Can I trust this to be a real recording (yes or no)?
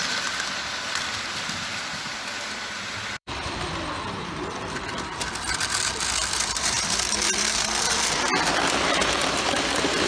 no